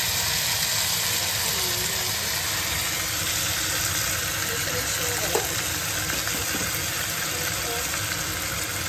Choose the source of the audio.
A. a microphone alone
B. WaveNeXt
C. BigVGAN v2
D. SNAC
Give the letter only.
A